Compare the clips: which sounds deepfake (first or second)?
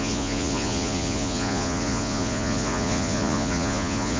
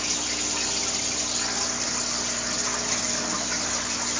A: first